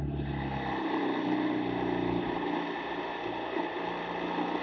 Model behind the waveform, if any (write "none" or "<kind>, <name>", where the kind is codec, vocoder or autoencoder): none